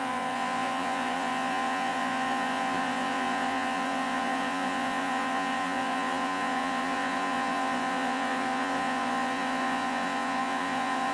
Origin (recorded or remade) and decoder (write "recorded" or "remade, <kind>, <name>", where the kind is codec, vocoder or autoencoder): remade, vocoder, Vocos